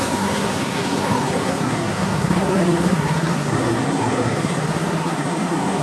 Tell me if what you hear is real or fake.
fake